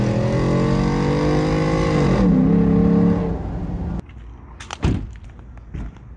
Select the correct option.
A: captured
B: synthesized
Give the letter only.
A